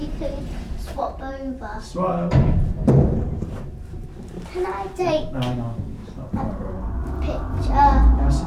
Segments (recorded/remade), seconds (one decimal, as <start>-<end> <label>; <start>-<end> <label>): 0.0-5.1 remade; 5.1-8.5 recorded